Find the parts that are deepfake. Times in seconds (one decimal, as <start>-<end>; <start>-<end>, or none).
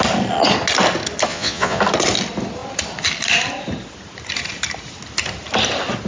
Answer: 1.3-1.8